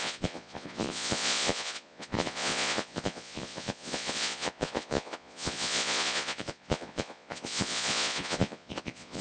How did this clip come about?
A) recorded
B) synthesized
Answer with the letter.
B